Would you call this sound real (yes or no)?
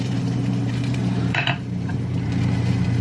no